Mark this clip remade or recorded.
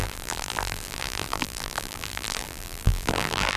remade